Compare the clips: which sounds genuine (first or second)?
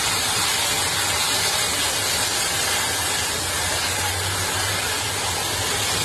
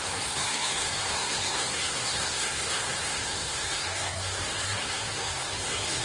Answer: first